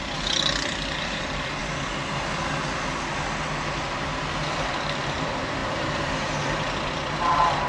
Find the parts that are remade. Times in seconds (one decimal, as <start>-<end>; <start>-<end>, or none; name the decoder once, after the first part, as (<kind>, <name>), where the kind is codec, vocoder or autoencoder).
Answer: 0.0-1.6 (vocoder, BigVGAN v2); 4.7-5.6; 6.9-7.7